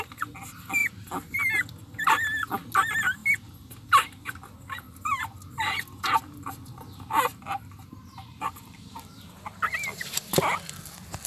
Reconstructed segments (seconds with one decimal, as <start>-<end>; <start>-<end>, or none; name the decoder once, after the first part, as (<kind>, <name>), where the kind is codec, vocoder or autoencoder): 0.8-1.6 (vocoder, BigVGAN v2); 7.3-9.4